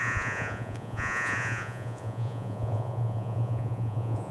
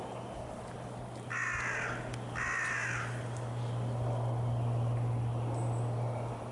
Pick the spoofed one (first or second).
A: first